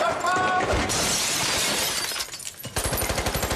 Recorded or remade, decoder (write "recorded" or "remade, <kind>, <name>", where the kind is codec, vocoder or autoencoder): remade, vocoder, BigVGAN v2